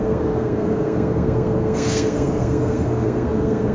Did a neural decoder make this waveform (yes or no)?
yes